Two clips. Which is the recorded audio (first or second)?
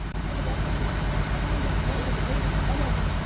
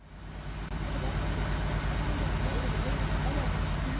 second